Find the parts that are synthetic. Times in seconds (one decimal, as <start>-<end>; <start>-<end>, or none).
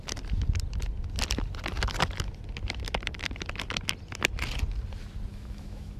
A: 5.3-6.0